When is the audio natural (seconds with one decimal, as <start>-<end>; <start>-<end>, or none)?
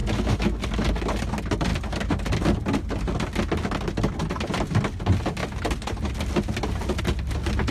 0.6-7.7